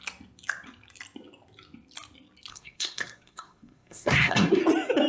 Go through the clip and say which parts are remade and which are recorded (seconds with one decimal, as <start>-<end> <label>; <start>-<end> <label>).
0.0-2.5 recorded; 2.5-4.6 remade; 4.6-5.1 recorded